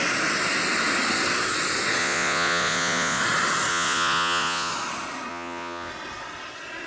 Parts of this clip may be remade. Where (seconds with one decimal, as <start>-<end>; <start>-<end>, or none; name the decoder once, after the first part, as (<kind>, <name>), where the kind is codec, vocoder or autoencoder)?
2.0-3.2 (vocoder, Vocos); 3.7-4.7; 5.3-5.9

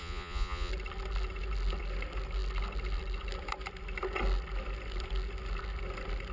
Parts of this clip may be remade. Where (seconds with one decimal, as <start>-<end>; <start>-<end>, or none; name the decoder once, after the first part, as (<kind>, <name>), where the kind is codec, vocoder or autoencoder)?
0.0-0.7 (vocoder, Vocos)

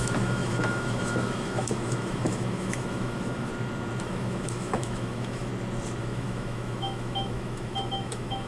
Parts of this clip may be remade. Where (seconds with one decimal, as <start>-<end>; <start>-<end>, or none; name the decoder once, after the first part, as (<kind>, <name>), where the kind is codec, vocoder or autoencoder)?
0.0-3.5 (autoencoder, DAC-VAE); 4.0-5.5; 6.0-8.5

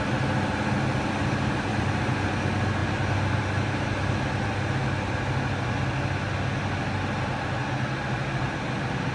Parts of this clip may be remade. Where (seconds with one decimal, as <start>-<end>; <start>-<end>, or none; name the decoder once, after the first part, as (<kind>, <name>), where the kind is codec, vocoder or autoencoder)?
1.7-2.3 (vocoder, BigVGAN v2)